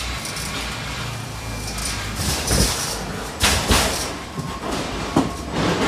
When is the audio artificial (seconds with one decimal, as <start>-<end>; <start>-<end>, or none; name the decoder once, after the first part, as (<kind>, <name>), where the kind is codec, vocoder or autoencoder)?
0.0-5.9 (vocoder, BigVGAN v2)